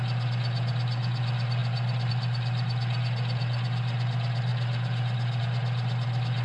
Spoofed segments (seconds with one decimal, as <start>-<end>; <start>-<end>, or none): none